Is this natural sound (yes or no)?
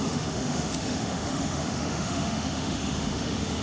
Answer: no